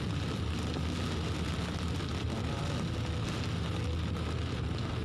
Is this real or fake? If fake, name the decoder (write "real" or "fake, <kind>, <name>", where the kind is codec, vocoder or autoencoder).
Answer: real